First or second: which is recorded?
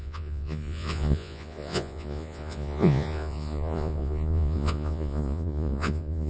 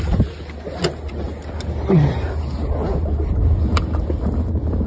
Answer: second